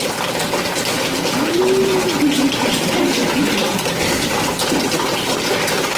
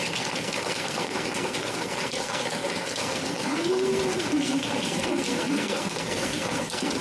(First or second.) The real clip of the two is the first